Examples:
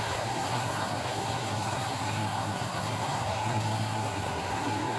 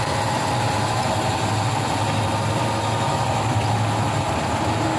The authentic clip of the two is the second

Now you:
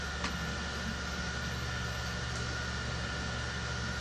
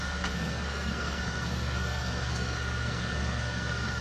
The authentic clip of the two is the first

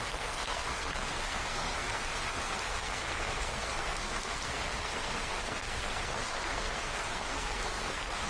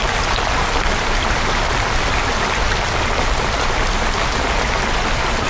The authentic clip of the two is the second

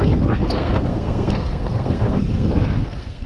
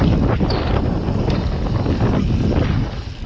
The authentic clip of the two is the second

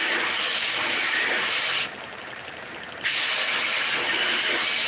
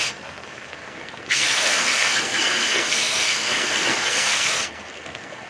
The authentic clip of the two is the first